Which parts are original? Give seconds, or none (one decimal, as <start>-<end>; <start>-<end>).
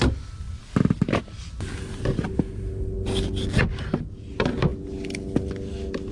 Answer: 0.0-6.1